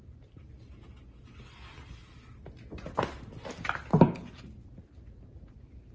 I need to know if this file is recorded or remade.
recorded